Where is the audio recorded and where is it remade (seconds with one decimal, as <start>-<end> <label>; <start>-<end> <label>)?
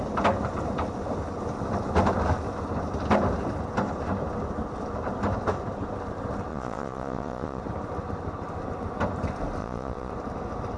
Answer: 0.0-6.5 recorded; 6.5-7.6 remade; 7.6-9.6 recorded; 9.6-10.1 remade; 10.1-10.8 recorded